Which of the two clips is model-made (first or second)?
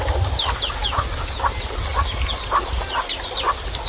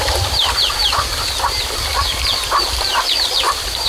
second